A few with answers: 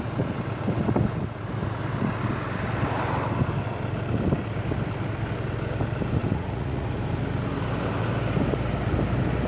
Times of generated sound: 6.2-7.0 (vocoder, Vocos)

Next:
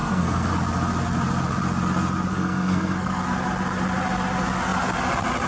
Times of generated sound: 0.0-0.5 (codec, SNAC); 2.3-3.2

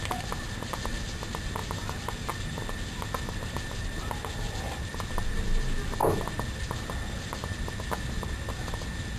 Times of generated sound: 1.6-5.1 (vocoder, BigVGAN v2)

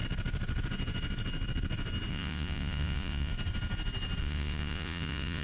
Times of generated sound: 2.1-3.3 (vocoder, Vocos); 4.2-5.4

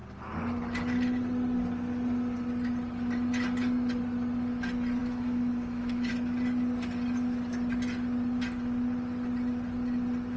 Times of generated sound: 5.0-6.1 (autoencoder, DAC-VAE)

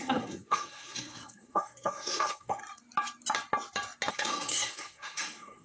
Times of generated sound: 0.0-2.6 (codec, SNAC); 4.1-5.6